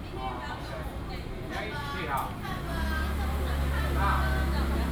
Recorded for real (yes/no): yes